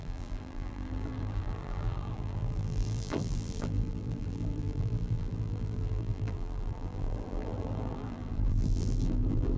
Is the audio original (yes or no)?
no